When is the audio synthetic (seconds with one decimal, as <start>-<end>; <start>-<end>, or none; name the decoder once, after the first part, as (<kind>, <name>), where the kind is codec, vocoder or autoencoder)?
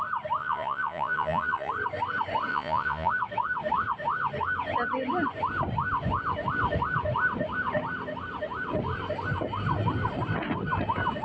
0.4-1.7 (vocoder, Vocos); 2.5-3.1